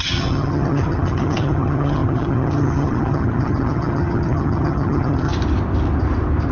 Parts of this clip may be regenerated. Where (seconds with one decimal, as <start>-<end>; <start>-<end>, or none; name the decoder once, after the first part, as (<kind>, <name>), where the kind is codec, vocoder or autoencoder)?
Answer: 0.0-5.3 (vocoder, HiFi-GAN)